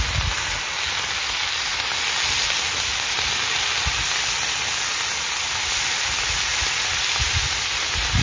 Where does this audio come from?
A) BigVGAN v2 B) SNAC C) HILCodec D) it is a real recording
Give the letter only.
D